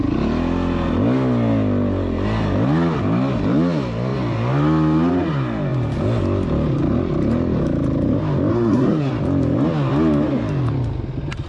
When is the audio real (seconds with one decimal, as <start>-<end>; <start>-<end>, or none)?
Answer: 0.0-8.5; 9.1-11.5